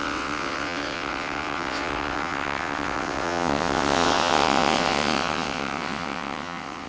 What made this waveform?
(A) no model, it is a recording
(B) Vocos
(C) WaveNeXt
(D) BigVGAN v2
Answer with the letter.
C